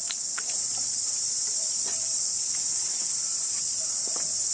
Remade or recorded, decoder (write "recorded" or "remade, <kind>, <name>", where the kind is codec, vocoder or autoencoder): remade, vocoder, BigVGAN v2